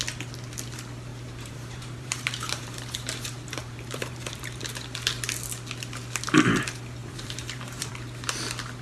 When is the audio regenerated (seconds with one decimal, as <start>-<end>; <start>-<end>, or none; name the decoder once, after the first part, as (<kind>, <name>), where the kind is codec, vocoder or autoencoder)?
1.1-4.6 (vocoder, BigVGAN v2); 7.0-7.9